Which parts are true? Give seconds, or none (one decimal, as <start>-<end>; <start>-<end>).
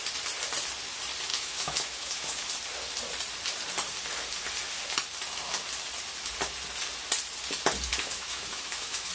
0.0-1.3; 2.4-7.9